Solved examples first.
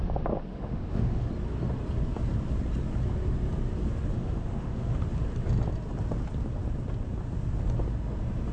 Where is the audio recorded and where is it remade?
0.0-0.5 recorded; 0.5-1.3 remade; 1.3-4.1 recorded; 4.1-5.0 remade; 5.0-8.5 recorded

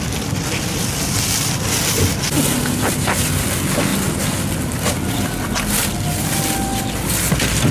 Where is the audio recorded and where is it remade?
0.0-7.7 recorded

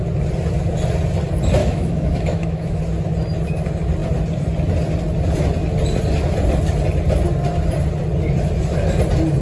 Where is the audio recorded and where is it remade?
0.0-1.6 recorded; 1.6-2.8 remade; 2.8-9.4 recorded

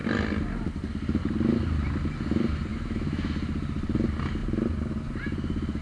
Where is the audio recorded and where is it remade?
0.0-2.7 recorded; 2.7-3.3 remade; 3.3-5.8 recorded

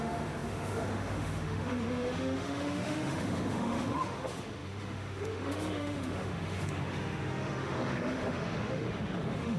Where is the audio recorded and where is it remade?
0.0-9.6 remade